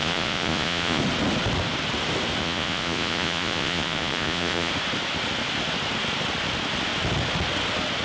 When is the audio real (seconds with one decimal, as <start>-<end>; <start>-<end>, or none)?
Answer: 1.0-2.4; 4.7-8.0